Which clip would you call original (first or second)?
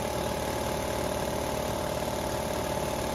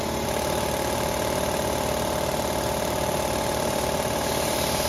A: first